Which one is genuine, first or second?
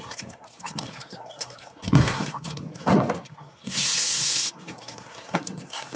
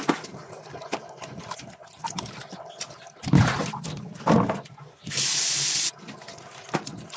second